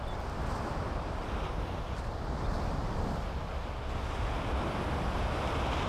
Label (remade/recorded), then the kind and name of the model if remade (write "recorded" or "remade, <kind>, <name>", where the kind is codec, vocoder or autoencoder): recorded